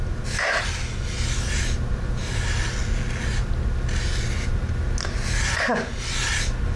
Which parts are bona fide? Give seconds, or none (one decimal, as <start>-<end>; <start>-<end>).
0.0-6.8